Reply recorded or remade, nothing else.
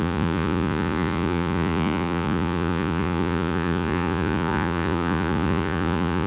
remade